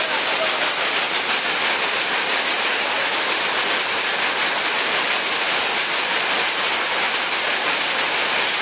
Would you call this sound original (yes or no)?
yes